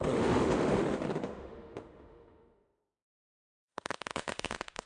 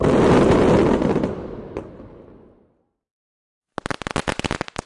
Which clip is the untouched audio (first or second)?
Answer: second